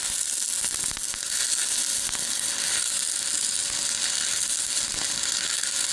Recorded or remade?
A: recorded